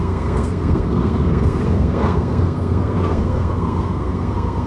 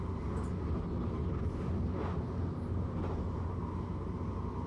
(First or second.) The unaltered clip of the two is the second